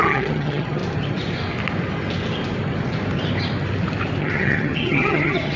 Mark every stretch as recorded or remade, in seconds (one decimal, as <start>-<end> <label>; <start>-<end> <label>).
0.0-0.8 remade; 0.8-4.2 recorded; 4.2-5.6 remade